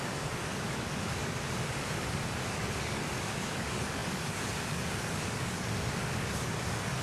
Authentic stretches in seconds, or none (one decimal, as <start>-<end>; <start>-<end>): none